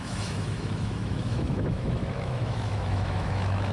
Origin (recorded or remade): remade